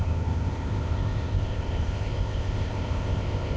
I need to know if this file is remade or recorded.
remade